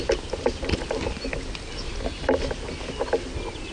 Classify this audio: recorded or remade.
recorded